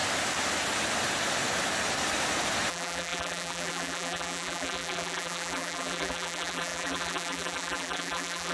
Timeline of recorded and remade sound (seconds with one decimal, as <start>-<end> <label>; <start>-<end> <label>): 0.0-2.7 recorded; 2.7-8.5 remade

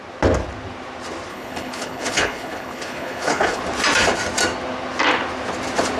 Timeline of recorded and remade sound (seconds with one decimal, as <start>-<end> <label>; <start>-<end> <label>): 0.0-1.3 recorded; 1.3-3.6 remade; 3.6-6.0 recorded

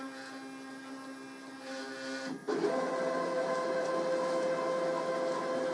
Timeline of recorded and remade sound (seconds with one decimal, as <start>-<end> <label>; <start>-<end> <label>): 0.0-2.4 recorded; 2.4-3.9 remade; 3.9-5.7 recorded

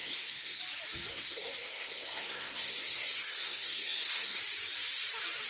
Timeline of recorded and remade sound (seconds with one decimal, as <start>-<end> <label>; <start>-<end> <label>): 0.0-0.6 remade; 0.6-1.1 recorded; 1.1-4.4 remade; 4.4-5.5 recorded

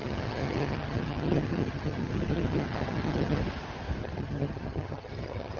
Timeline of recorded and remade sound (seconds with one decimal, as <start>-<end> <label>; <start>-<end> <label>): 0.0-3.4 remade; 3.4-4.0 recorded; 4.0-5.6 remade

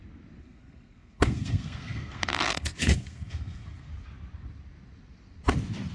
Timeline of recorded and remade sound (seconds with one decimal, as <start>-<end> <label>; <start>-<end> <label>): 0.0-0.4 recorded; 0.4-3.9 remade; 3.9-5.9 recorded

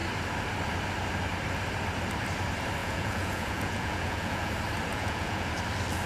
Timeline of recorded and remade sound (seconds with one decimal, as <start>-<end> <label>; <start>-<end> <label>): 0.0-2.8 recorded; 2.8-4.5 remade; 4.5-4.9 recorded; 4.9-5.5 remade; 5.5-6.1 recorded

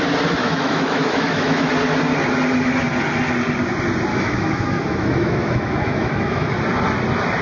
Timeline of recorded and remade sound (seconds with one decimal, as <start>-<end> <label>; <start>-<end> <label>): 0.0-0.4 recorded; 0.4-1.7 remade; 1.7-4.1 recorded; 4.1-6.6 remade; 6.6-7.4 recorded